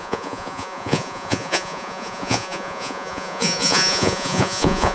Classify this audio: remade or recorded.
remade